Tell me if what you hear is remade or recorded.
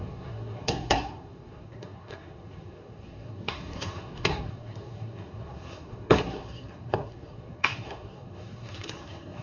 remade